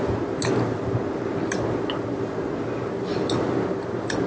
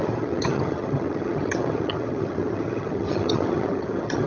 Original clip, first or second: first